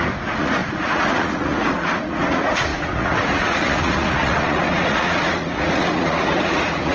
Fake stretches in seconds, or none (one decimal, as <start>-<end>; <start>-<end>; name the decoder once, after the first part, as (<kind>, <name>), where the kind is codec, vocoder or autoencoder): 0.0-6.9 (vocoder, Vocos)